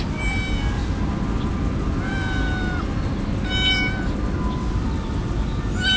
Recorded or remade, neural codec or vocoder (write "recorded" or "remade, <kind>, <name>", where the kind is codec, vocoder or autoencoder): recorded